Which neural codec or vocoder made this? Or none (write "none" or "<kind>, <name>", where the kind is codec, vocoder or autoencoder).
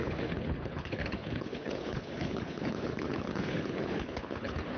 codec, HILCodec